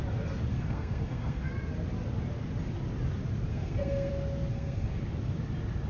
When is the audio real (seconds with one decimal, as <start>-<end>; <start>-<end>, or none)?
0.0-0.5; 1.5-3.5; 4.1-4.5; 5.0-5.9